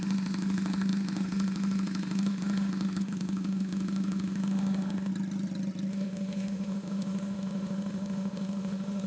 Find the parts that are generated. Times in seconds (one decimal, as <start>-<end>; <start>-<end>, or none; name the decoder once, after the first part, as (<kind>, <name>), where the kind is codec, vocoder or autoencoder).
0.0-5.1 (autoencoder, DAC-VAE); 5.9-9.1